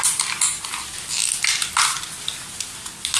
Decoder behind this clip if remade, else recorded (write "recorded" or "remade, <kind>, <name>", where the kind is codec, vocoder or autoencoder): recorded